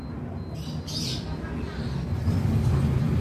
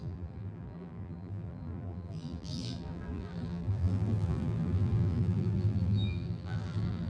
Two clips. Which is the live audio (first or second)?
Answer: first